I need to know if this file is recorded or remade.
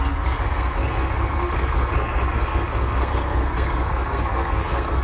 remade